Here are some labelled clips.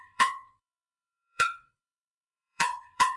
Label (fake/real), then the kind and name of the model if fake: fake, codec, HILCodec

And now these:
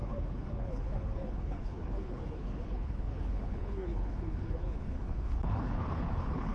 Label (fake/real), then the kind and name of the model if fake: fake, codec, HILCodec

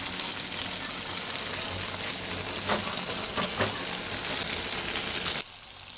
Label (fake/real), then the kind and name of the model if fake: real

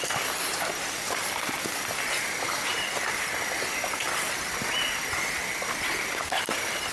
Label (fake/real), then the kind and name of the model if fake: real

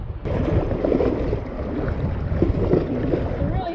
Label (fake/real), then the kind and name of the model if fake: real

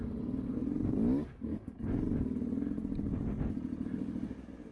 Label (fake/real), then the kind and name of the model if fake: real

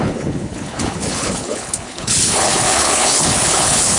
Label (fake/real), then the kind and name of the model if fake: fake, codec, HILCodec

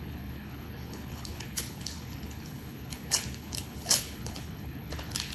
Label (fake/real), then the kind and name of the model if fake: fake, codec, HILCodec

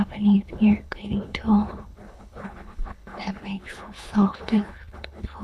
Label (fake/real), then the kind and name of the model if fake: fake, codec, HILCodec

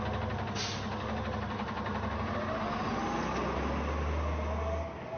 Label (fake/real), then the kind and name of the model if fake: real